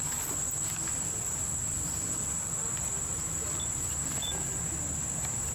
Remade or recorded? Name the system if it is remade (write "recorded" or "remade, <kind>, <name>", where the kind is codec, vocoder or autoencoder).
recorded